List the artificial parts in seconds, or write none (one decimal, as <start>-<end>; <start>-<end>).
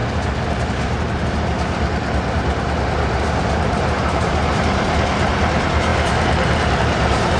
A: 0.7-1.5; 3.6-5.9; 6.8-7.4